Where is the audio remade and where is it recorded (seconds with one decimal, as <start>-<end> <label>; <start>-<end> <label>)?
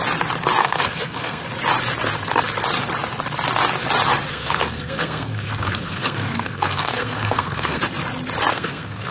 0.0-0.6 recorded; 0.6-1.4 remade; 1.4-4.3 recorded; 4.3-7.8 remade; 7.8-8.5 recorded; 8.5-9.1 remade